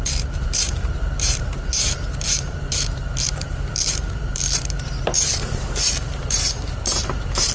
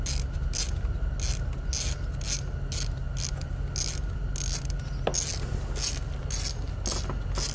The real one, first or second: second